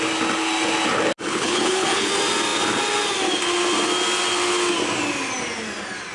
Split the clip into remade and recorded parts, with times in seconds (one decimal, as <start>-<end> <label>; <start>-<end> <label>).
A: 0.0-1.3 recorded; 1.3-2.1 remade; 2.1-6.1 recorded